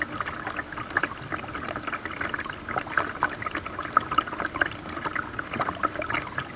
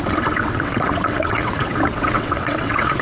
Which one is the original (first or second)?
first